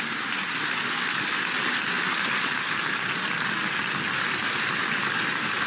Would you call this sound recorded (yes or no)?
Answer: yes